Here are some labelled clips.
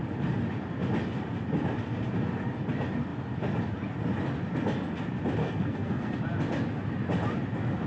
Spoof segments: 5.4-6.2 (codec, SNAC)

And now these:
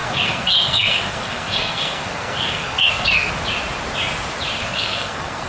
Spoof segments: 0.0-3.3 (codec, SNAC); 4.6-5.5

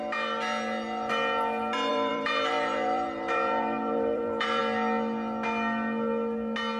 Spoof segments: 1.9-4.6 (vocoder, BigVGAN v2)

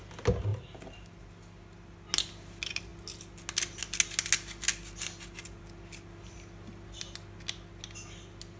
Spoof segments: none